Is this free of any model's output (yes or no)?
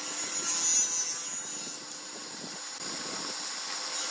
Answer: yes